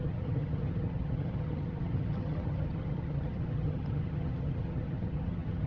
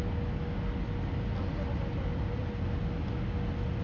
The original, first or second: second